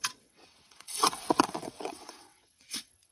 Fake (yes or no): yes